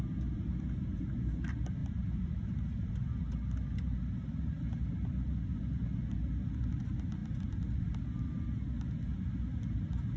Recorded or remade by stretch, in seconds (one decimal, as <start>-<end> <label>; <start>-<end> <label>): 0.0-1.8 recorded; 1.8-2.9 remade; 2.9-10.2 recorded